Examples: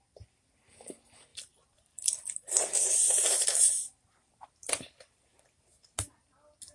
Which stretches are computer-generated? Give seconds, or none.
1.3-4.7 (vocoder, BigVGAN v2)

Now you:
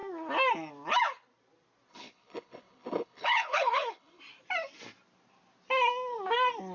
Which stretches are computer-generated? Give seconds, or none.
1.9-4.2 (codec, HILCodec)

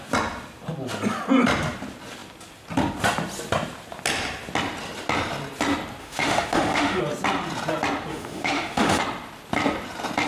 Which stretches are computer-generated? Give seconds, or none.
6.0-7.0 (autoencoder, DAC-VAE); 8.1-9.0